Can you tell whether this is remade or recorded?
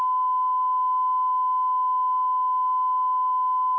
recorded